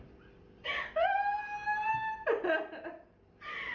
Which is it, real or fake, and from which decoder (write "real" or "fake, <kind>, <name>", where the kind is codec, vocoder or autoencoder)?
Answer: real